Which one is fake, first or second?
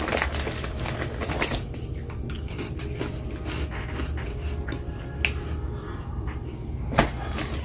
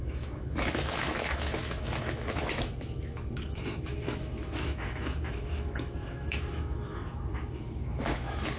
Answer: second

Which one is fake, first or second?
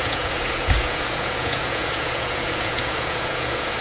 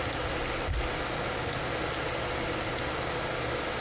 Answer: first